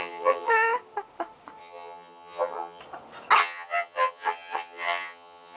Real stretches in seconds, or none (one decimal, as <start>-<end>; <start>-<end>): 0.5-1.6; 2.8-3.4